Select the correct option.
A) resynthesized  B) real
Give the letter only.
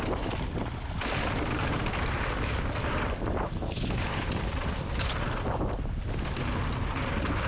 A